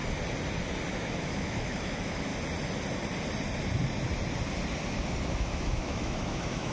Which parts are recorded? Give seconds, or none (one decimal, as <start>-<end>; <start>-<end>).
0.0-0.9; 2.3-5.3